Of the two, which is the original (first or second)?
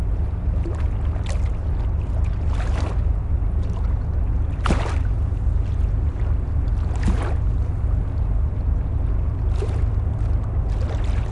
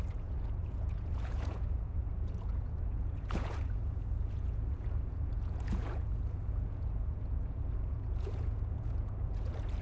first